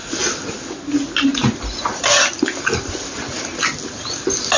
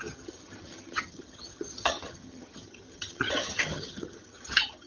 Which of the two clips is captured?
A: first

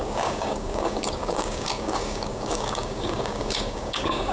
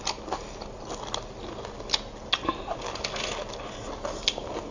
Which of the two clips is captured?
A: second